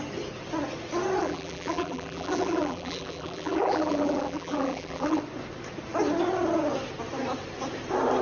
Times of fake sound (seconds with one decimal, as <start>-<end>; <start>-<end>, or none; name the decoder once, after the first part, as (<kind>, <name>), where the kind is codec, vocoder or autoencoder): 1.2-5.2 (vocoder, BigVGAN v2)